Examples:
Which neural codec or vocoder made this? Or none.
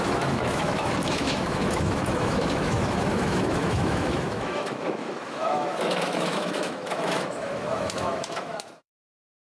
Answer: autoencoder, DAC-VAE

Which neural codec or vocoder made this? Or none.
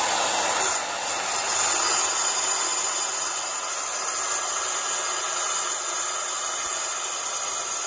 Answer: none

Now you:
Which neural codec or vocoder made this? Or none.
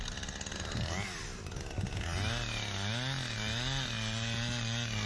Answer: none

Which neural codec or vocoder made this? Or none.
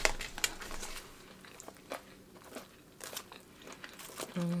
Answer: none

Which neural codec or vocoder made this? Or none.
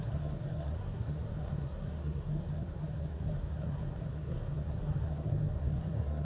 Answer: codec, SNAC